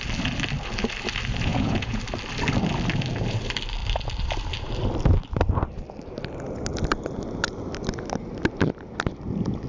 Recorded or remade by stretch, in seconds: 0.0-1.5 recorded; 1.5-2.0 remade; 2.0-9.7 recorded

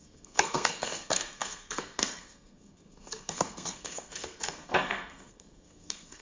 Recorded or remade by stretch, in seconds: 0.0-6.2 remade

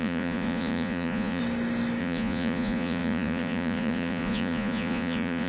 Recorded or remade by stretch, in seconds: 0.0-1.4 remade; 1.4-2.0 recorded; 2.0-5.5 remade

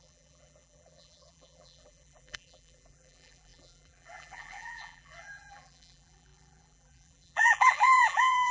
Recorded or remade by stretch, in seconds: 0.0-8.5 remade